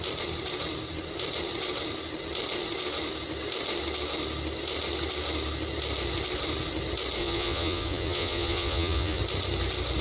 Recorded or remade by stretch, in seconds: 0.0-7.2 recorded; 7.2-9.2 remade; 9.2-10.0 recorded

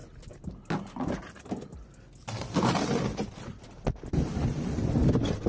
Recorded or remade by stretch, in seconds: 0.0-5.5 recorded

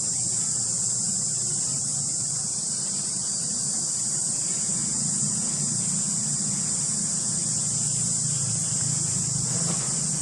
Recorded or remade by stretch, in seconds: 0.0-10.2 recorded

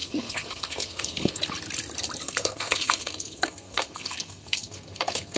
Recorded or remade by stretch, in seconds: 0.0-1.4 remade; 1.4-2.2 recorded; 2.2-5.4 remade

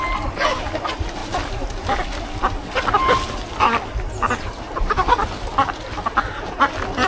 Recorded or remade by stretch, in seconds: 0.0-7.1 recorded

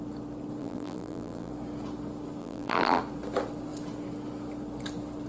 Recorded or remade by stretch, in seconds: 0.0-0.6 recorded; 0.6-1.5 remade; 1.5-2.4 recorded; 2.4-3.0 remade; 3.0-5.3 recorded

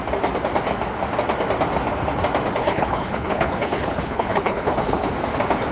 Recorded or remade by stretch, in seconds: 0.0-2.6 recorded; 2.6-5.1 remade; 5.1-5.7 recorded

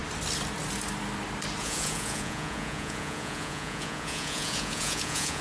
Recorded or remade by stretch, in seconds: 0.0-1.6 recorded; 1.6-5.4 remade